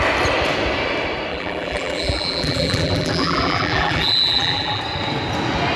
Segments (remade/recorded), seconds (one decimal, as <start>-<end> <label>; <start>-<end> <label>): 0.0-1.3 recorded; 1.3-4.8 remade; 4.8-5.8 recorded